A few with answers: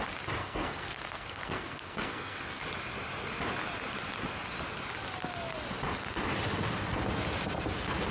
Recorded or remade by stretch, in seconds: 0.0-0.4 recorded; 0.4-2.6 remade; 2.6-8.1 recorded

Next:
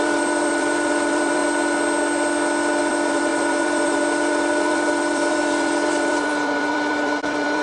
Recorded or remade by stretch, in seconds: 0.0-1.4 remade; 1.4-2.8 recorded; 2.8-7.6 remade

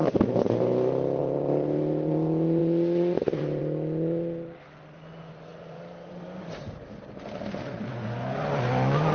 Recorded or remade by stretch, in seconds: 0.0-1.2 recorded; 1.2-2.1 remade; 2.1-5.5 recorded; 5.5-7.1 remade; 7.1-9.1 recorded

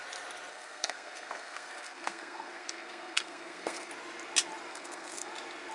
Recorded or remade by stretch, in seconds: 0.0-0.5 recorded; 0.5-3.9 remade; 3.9-4.7 recorded; 4.7-5.3 remade; 5.3-5.7 recorded

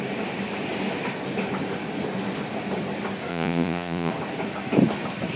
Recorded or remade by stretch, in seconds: 0.0-3.3 recorded; 3.3-4.1 remade; 4.1-5.4 recorded

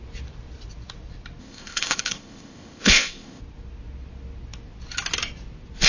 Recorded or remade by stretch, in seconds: 0.0-1.4 recorded; 1.4-3.4 remade; 3.4-5.9 recorded